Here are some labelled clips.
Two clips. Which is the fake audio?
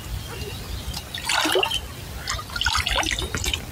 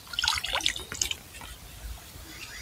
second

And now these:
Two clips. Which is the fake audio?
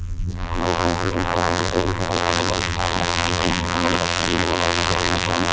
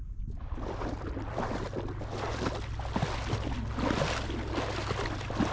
first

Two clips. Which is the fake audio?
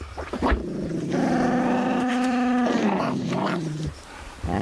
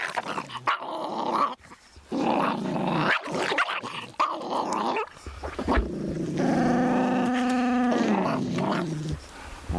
first